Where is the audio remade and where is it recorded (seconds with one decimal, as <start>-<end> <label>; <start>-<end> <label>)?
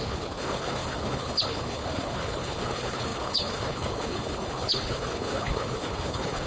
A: 0.0-6.5 remade